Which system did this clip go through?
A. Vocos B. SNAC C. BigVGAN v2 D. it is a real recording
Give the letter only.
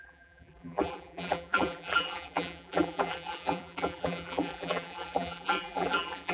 C